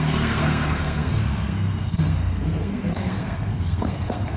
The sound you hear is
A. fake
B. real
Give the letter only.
A